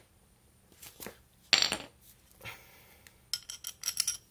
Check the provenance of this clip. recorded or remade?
recorded